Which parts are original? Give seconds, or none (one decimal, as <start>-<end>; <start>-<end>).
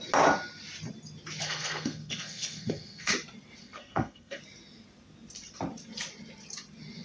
0.0-1.4; 3.1-3.6; 4.4-7.0